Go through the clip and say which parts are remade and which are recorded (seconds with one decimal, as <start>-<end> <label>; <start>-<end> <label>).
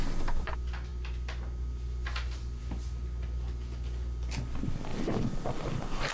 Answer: 0.0-4.9 recorded; 4.9-6.1 remade